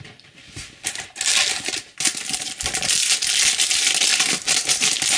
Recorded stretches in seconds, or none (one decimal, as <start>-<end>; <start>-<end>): 0.0-5.2